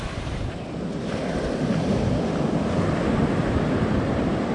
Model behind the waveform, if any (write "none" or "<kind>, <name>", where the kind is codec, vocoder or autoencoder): vocoder, BigVGAN v2